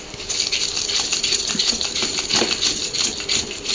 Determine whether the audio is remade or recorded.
recorded